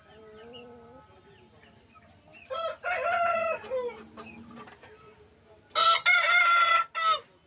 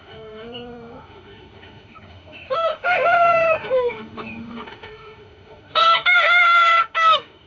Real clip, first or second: first